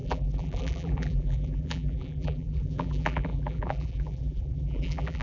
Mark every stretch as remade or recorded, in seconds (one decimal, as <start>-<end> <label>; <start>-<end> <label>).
0.0-5.2 remade

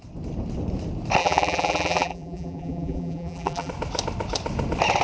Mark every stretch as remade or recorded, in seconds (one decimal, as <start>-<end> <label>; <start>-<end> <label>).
0.0-1.2 recorded; 1.2-3.7 remade; 3.7-5.0 recorded